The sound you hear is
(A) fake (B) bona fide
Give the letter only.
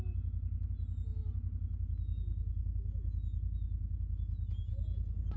B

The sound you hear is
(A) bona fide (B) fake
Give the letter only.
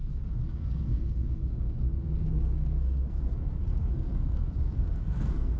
B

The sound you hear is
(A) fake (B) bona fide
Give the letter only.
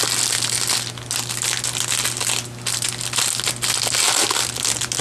B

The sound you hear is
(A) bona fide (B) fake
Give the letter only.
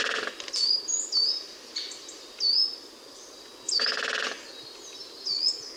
A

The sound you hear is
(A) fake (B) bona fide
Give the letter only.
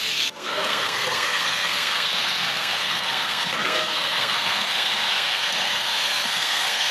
A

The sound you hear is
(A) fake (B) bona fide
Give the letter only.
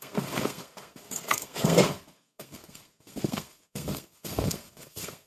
A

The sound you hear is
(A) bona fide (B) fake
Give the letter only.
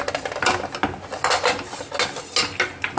A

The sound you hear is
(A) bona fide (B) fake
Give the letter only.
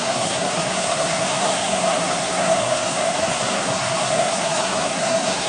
B